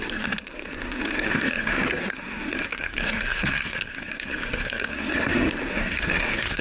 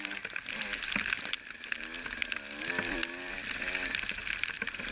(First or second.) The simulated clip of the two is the first